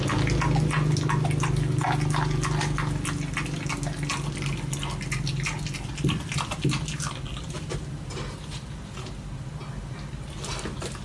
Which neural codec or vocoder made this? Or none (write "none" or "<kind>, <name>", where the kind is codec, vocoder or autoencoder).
none